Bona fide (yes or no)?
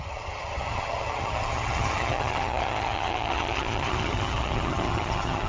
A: no